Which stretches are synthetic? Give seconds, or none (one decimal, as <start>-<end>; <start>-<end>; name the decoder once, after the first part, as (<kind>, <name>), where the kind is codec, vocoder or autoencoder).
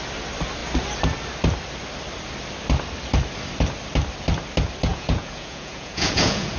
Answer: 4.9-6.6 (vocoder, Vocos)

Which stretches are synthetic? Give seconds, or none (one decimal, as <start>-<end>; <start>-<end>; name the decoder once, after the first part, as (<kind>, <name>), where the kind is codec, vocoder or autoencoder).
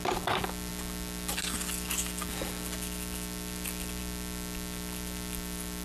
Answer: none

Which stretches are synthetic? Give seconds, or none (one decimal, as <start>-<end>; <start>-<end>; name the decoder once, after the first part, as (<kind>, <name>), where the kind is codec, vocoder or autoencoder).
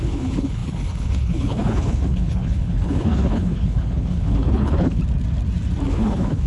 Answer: 0.0-5.0 (codec, HILCodec); 5.9-6.5